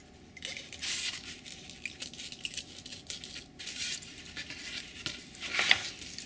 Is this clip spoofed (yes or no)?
no